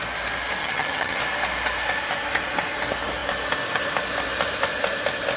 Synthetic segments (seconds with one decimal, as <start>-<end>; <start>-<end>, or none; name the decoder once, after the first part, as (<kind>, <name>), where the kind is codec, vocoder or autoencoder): 0.6-1.2 (vocoder, HiFi-GAN)